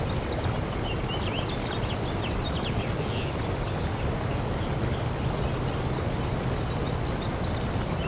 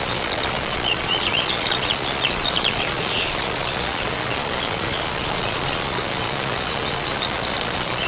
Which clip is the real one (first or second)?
first